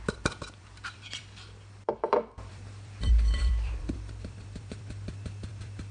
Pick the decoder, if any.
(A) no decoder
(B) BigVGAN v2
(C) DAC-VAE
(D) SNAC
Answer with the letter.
B